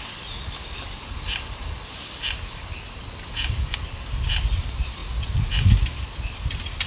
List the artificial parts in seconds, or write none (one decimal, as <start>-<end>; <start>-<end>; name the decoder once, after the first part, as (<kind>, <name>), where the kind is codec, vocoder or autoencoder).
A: none